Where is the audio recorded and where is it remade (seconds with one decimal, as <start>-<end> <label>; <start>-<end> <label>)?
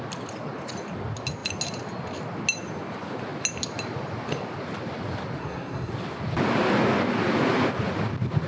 0.0-5.4 recorded; 5.4-5.9 remade; 5.9-8.5 recorded